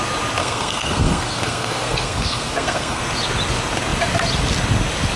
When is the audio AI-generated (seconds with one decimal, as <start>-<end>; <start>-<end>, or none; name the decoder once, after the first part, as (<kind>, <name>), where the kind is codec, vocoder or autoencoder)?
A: 0.4-3.0 (codec, SNAC)